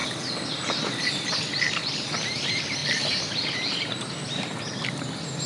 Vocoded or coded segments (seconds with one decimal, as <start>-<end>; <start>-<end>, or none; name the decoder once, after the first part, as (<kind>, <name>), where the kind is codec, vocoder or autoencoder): none